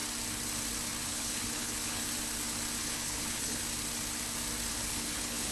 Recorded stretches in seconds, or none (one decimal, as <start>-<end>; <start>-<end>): 0.0-1.1; 2.0-2.8; 3.6-4.7